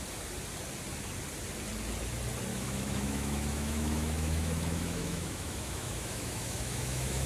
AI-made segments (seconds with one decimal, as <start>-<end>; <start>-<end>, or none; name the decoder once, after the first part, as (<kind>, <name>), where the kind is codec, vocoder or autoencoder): 2.5-7.3 (autoencoder, DAC-VAE)